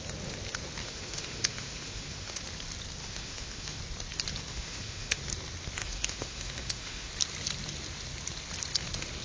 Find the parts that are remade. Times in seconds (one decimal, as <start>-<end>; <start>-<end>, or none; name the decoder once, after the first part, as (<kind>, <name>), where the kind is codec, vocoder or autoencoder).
0.8-2.4 (autoencoder, DAC-VAE); 3.0-3.8; 4.5-5.2; 5.8-7.1